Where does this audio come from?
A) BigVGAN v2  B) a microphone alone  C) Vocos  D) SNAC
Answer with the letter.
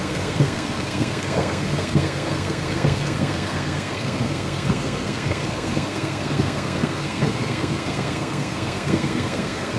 D